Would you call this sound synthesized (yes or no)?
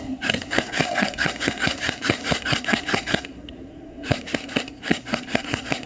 yes